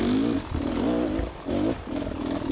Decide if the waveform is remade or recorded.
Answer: recorded